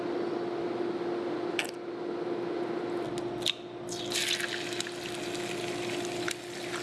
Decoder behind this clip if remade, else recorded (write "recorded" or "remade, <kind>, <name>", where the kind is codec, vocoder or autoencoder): recorded